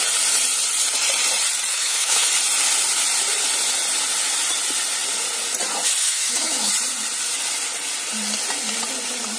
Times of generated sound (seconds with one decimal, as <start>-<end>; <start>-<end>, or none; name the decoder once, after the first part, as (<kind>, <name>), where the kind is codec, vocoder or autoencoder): 1.7-2.3 (autoencoder, DAC-VAE); 6.0-6.7